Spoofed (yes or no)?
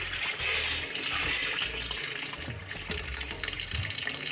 yes